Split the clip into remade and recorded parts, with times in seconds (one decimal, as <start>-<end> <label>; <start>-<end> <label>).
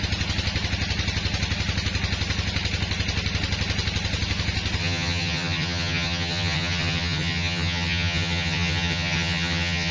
0.0-4.8 recorded; 4.8-9.9 remade